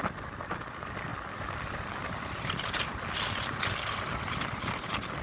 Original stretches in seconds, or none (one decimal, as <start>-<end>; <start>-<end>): 0.0-5.2